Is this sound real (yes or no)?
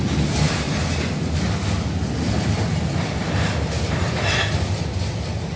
yes